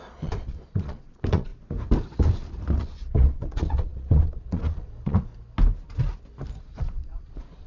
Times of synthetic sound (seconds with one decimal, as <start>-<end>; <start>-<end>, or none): 0.0-1.5; 2.8-5.3; 6.6-7.7